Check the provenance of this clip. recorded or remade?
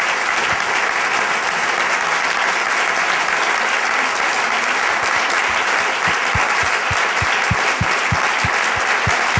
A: recorded